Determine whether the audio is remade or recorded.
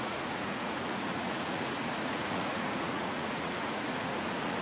remade